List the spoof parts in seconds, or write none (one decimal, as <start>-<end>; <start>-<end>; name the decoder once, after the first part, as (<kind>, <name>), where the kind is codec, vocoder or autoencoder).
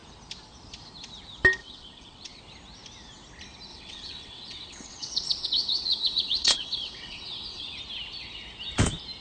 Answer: 1.6-2.4 (vocoder, WaveNeXt); 3.7-7.8